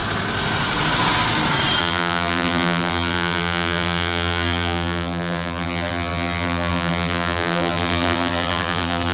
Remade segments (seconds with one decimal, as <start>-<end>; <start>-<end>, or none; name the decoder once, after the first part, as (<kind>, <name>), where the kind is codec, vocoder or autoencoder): 1.8-9.1 (vocoder, BigVGAN v2)